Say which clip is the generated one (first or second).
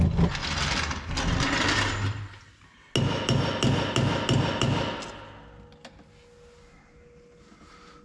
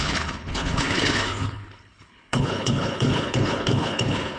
second